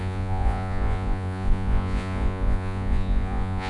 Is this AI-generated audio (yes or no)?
yes